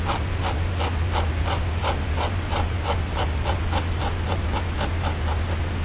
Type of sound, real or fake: real